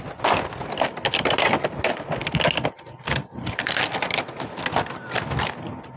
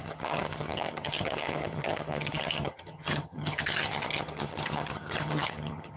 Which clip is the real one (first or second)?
first